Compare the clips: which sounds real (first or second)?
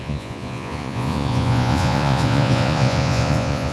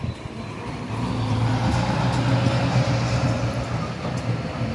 second